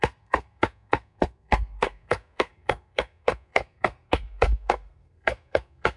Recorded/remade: remade